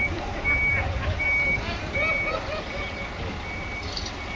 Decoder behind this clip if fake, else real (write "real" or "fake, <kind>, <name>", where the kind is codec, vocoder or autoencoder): fake, vocoder, BigVGAN v2